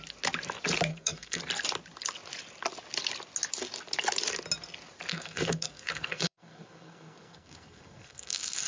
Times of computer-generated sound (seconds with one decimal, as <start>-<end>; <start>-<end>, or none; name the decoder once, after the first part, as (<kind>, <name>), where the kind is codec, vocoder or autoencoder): 0.9-1.4 (codec, SNAC); 5.1-8.7